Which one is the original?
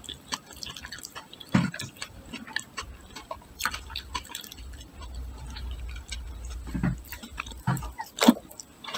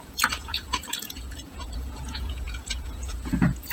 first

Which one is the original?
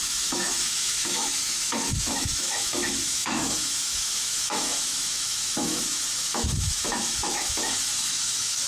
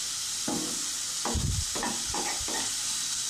second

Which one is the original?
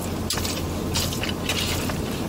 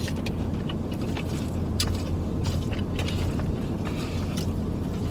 first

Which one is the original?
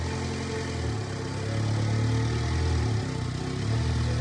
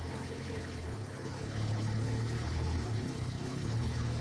first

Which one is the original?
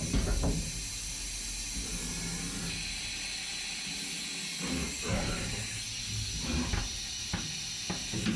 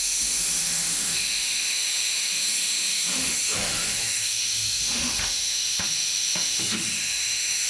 first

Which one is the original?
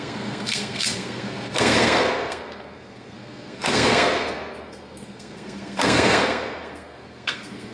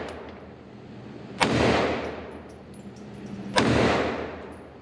second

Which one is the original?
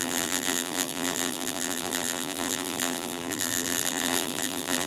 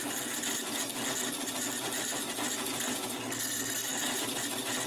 second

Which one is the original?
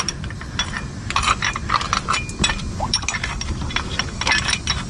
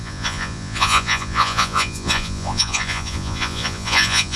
first